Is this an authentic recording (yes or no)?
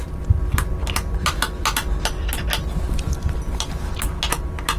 yes